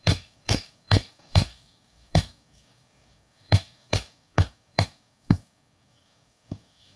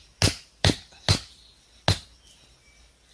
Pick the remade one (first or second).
first